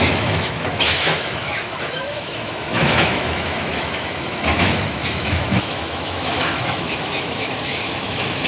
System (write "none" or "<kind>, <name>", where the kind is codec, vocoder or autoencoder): autoencoder, DAC-VAE